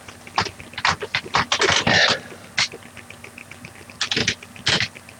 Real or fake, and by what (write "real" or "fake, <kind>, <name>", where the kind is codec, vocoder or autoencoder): real